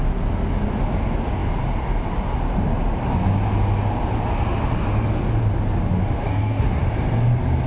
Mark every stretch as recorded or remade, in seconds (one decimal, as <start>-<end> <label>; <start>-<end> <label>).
0.0-6.2 recorded; 6.2-6.8 remade; 6.8-7.7 recorded